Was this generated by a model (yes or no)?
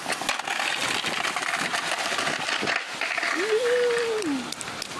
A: no